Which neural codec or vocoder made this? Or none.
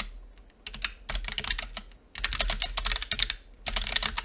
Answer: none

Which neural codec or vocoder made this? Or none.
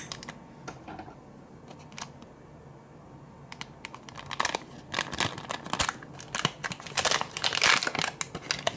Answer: none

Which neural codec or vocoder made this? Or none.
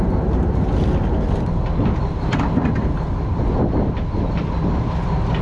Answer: none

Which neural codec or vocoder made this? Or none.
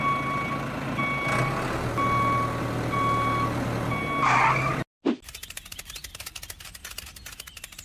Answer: none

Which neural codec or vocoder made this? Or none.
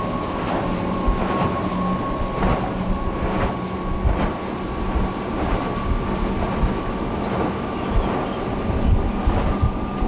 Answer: none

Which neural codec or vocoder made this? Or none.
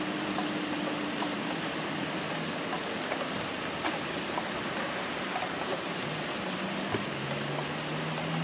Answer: none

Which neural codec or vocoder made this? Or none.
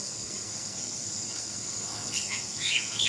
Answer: codec, SNAC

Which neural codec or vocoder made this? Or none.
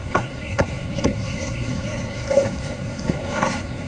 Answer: codec, SNAC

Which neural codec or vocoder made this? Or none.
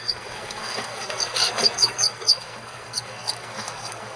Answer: codec, SNAC